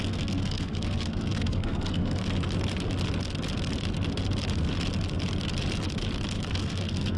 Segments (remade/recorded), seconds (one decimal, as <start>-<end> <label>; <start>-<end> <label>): 0.0-2.2 remade; 2.2-6.5 recorded; 6.5-7.2 remade